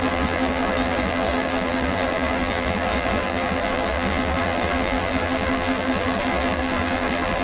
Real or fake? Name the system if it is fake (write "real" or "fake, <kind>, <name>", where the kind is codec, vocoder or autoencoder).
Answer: fake, vocoder, BigVGAN v2